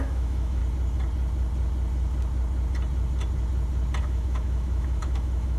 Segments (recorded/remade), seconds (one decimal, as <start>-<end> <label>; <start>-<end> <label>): 0.0-0.6 remade; 0.6-4.0 recorded; 4.0-5.6 remade